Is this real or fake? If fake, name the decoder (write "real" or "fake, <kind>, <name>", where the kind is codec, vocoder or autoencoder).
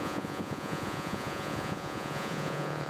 fake, vocoder, Vocos